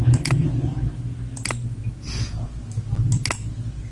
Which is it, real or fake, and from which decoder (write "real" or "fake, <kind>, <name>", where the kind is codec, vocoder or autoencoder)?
real